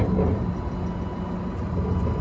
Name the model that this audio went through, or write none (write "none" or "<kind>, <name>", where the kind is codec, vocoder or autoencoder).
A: none